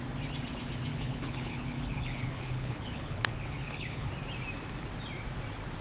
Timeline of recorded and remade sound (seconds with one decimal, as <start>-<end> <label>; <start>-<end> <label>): 0.0-0.9 recorded; 0.9-4.1 remade; 4.1-5.8 recorded